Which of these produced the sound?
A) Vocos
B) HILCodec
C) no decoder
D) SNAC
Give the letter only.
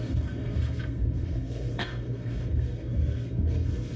D